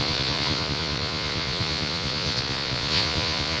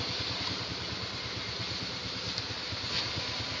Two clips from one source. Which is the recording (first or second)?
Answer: second